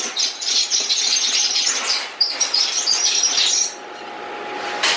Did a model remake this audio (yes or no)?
yes